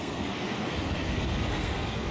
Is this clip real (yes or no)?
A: no